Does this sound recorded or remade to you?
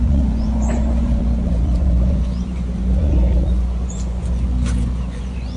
remade